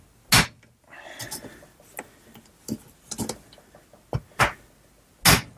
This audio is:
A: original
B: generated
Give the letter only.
A